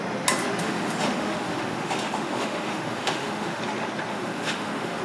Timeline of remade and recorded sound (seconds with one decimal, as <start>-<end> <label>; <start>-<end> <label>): 0.0-0.6 recorded; 0.6-3.6 remade; 3.6-4.1 recorded; 4.1-5.0 remade